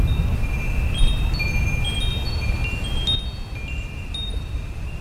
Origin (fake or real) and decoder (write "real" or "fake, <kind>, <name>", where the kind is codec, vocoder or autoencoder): real